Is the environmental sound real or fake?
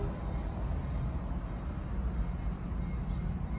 real